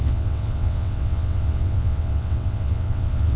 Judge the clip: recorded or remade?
remade